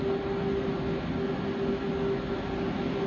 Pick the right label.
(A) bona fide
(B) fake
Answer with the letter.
A